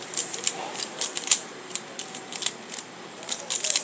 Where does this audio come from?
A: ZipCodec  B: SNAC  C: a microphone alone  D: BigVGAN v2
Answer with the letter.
D